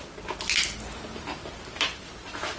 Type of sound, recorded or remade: recorded